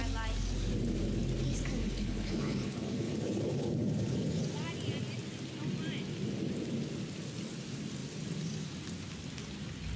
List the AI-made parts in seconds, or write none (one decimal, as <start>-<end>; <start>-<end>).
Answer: 1.8-4.4